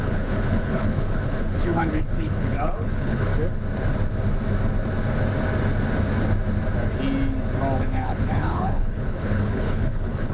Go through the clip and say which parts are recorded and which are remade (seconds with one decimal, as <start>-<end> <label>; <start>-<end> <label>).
0.0-3.3 remade; 3.3-7.8 recorded; 7.8-10.3 remade